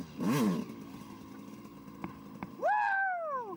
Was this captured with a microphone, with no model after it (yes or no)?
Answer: yes